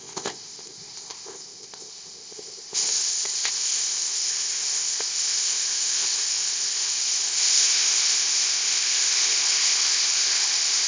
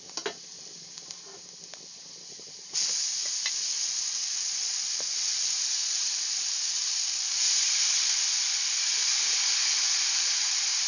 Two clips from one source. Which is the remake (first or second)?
first